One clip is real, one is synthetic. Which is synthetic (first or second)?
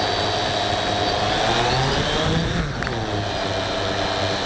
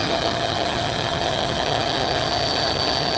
second